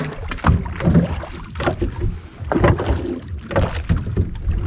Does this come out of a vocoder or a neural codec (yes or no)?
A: no